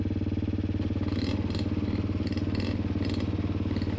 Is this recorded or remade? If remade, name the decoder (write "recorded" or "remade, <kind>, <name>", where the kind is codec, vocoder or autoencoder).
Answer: recorded